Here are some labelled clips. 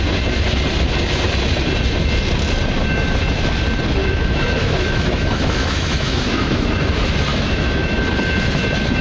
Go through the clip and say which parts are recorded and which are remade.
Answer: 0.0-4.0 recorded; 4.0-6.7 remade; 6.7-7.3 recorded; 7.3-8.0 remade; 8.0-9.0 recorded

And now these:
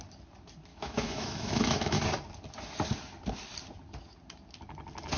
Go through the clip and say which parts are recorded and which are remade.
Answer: 0.0-0.7 recorded; 0.7-2.0 remade; 2.0-5.2 recorded